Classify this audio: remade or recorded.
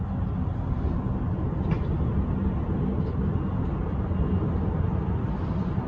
recorded